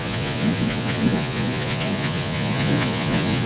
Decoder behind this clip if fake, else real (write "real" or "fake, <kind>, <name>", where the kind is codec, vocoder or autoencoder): fake, vocoder, Vocos